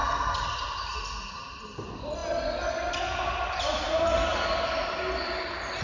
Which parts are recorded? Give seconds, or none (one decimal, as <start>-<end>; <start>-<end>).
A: 0.0-5.8